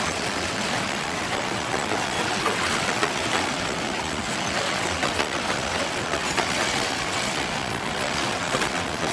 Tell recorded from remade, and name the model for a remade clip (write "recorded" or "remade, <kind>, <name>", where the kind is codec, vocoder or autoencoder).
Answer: remade, vocoder, WaveNeXt